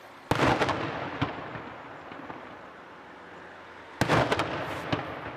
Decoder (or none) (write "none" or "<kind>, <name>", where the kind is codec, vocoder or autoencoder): none